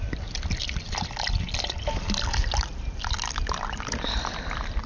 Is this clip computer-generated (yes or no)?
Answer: no